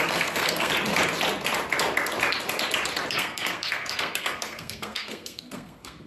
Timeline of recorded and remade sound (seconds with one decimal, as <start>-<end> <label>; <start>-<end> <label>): 0.0-0.7 remade; 0.7-3.1 recorded; 3.1-6.1 remade